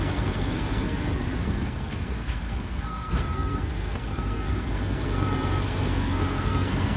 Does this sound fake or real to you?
fake